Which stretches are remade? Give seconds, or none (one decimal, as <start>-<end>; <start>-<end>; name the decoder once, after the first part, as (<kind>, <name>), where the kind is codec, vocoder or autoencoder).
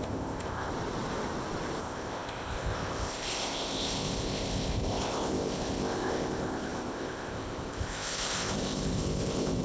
0.0-0.7 (codec, ZipCodec); 1.8-9.6